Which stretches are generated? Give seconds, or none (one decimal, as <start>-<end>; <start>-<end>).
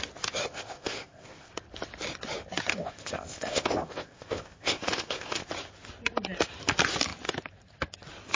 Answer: 0.4-1.5; 2.7-5.5